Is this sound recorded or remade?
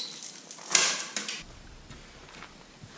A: recorded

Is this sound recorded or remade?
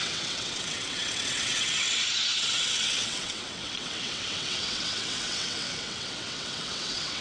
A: remade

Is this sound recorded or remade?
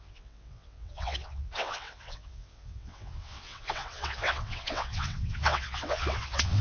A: remade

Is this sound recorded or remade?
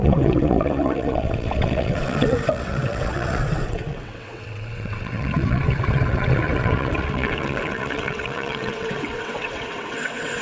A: remade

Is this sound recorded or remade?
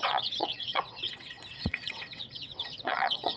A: remade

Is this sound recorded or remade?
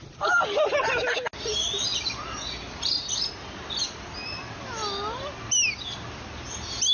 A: recorded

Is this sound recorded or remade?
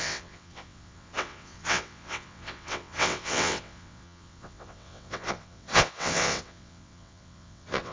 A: remade